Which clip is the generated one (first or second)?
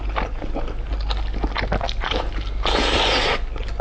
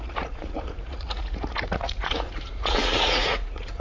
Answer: second